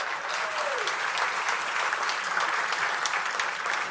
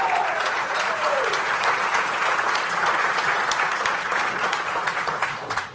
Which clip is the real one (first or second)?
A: first